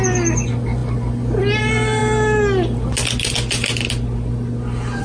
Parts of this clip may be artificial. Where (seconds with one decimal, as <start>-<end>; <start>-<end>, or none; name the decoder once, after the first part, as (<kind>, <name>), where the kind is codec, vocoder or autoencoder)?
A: none